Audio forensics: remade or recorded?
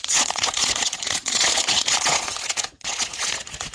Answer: remade